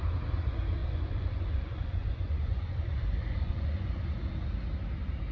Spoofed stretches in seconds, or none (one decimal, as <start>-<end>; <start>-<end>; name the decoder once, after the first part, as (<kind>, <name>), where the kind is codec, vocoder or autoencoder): 0.8-4.0 (vocoder, Vocos)